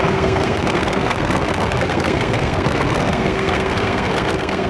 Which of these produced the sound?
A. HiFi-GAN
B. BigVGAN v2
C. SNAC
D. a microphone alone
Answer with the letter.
C